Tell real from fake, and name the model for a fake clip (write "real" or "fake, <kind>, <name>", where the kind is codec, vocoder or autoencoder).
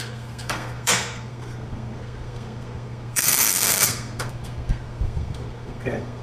fake, codec, SNAC